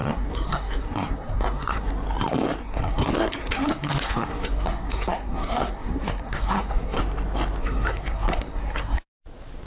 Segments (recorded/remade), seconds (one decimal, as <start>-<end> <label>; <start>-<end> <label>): 0.0-1.9 remade; 1.9-2.6 recorded; 2.6-7.0 remade; 7.0-7.6 recorded; 7.6-9.0 remade; 9.0-9.7 recorded